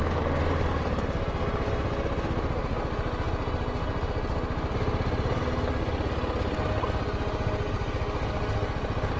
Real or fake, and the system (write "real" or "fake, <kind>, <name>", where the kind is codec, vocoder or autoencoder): real